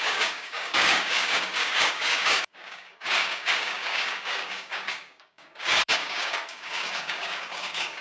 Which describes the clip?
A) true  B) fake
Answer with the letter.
B